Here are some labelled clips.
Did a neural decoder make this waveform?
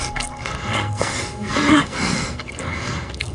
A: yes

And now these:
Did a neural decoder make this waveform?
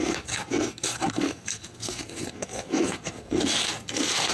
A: yes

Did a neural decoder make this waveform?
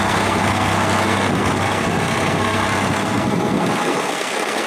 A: yes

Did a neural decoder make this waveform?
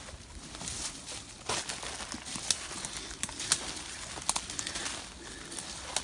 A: no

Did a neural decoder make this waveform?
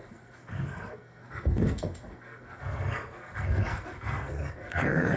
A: yes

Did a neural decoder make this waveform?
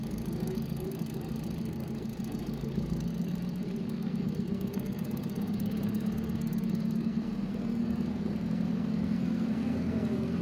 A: yes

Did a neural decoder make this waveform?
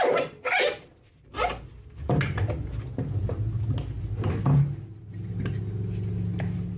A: no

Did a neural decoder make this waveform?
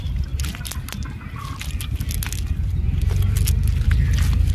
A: no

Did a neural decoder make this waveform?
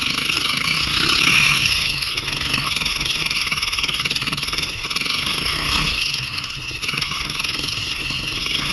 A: yes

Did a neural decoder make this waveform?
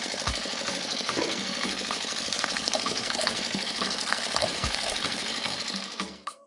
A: yes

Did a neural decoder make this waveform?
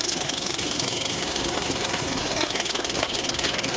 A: yes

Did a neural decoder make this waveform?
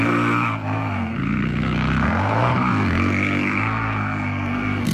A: yes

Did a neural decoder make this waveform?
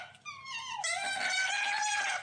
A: no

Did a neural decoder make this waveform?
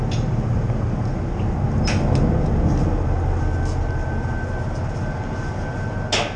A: no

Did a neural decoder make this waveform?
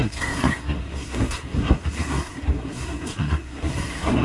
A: yes